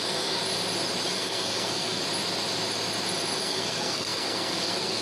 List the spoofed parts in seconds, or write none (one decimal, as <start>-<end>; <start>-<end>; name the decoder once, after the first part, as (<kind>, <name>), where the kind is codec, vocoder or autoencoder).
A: 0.0-0.4 (codec, SNAC); 1.1-2.0; 3.4-5.0